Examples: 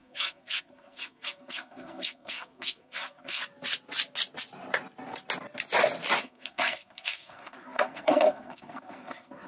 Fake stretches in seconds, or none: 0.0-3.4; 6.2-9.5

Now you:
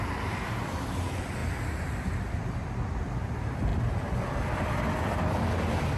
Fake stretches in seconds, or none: none

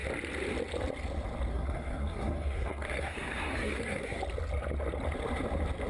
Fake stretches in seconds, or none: 1.5-4.2

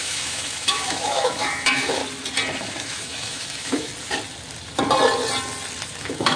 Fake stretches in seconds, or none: 0.0-2.0; 2.6-3.9; 6.0-6.4

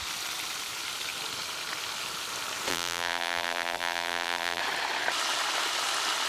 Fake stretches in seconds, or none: 2.7-4.6